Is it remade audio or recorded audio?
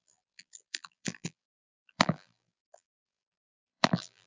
remade